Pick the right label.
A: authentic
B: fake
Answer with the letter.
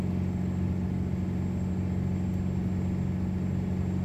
A